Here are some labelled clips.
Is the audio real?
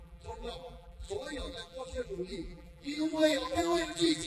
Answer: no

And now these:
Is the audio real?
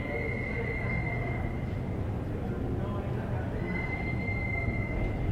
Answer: yes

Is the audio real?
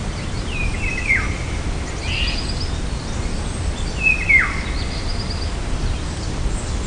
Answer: yes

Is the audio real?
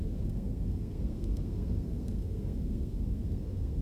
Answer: no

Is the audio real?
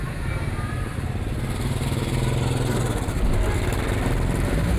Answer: yes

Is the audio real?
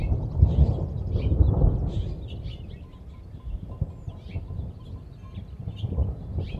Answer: yes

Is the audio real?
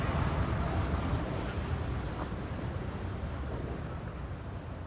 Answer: no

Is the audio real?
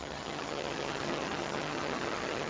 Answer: no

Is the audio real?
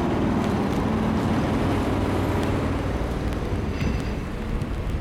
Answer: yes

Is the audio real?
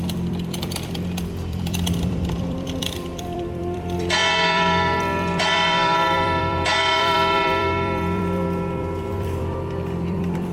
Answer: no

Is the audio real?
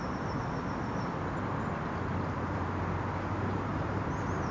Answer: yes